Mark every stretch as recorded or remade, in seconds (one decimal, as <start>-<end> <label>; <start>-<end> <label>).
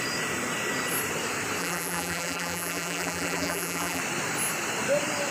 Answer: 0.0-1.6 recorded; 1.6-4.0 remade; 4.0-5.3 recorded